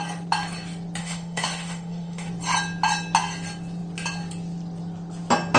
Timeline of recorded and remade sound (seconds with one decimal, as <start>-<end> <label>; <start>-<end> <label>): 0.0-1.0 recorded; 1.0-2.3 remade; 2.3-5.6 recorded